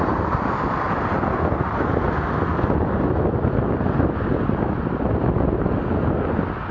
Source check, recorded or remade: recorded